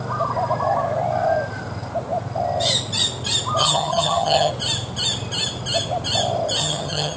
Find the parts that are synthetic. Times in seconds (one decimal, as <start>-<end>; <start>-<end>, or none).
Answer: 3.6-4.5; 6.6-7.2